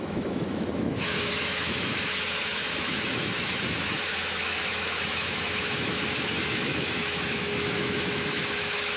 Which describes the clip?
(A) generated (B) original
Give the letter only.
A